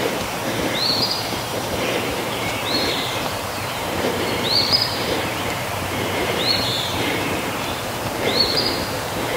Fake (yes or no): yes